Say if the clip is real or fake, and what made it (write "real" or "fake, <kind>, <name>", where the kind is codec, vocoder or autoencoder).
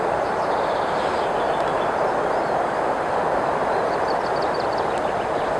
real